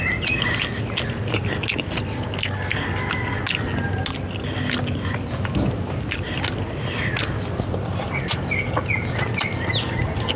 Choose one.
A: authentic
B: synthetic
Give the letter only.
A